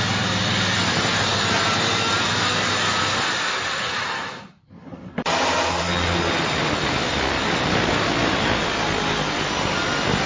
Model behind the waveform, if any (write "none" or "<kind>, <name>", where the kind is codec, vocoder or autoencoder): vocoder, BigVGAN v2